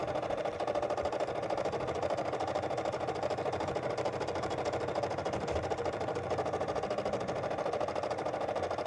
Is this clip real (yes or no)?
yes